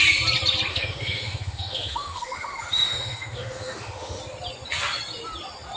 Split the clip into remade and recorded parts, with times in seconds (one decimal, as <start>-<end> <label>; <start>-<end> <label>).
0.0-0.7 recorded; 0.7-4.2 remade; 4.2-5.8 recorded